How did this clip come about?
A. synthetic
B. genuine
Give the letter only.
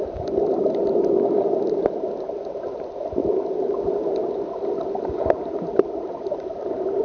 B